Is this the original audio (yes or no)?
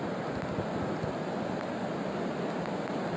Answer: yes